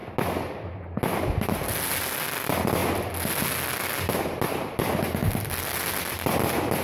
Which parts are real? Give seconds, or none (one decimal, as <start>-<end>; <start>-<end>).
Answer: 0.0-6.8

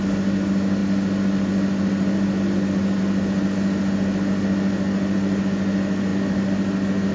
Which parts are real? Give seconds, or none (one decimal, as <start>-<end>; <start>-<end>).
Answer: 0.0-0.8; 3.0-6.1

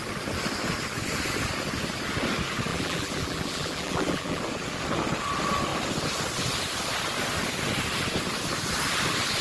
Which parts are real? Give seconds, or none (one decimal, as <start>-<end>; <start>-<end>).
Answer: 0.0-2.7; 4.4-9.4

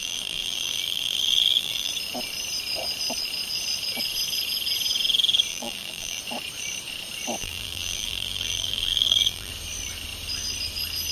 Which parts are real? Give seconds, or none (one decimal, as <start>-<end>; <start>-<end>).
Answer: 1.9-5.5; 6.2-7.4; 9.5-11.1

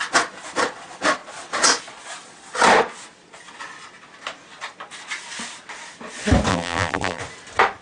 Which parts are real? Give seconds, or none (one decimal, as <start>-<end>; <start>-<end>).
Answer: 0.0-6.5; 7.2-7.8

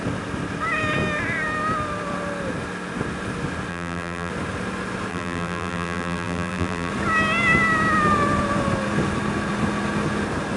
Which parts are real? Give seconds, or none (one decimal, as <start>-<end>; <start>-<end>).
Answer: 0.0-3.7; 4.3-5.1; 6.9-10.6

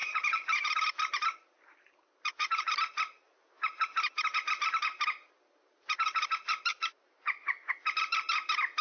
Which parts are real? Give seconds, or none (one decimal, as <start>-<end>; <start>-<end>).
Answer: 2.7-6.7; 7.7-8.8